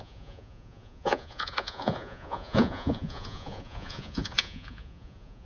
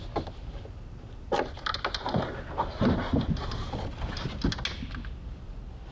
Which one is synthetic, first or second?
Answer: first